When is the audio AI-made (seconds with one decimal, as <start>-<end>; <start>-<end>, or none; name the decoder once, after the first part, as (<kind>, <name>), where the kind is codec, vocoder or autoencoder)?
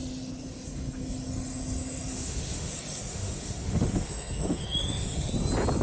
2.1-2.7 (autoencoder, DAC-VAE); 3.1-5.3